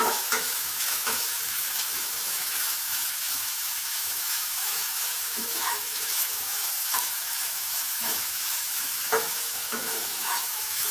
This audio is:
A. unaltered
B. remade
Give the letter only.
B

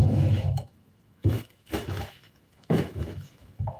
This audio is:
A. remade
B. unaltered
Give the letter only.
A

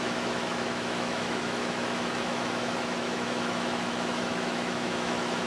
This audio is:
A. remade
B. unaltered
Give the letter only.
A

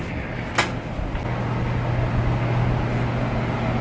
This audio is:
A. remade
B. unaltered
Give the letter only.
B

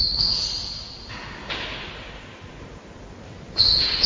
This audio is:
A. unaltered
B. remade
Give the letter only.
A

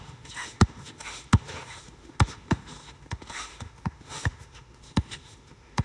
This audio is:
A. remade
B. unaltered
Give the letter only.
A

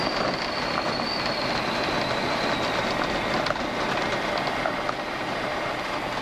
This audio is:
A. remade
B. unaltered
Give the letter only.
B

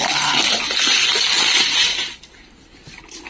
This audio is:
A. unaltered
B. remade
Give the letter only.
A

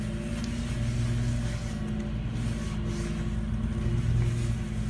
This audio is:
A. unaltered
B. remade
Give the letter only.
A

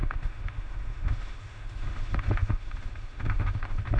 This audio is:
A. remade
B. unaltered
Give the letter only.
A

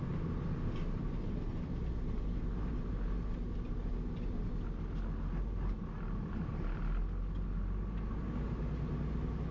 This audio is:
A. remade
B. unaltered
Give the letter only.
B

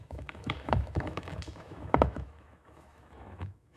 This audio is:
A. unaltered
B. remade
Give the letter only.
B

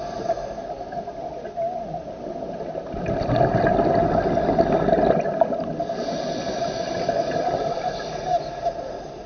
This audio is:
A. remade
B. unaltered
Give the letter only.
B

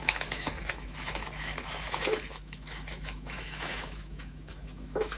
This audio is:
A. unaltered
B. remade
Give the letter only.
B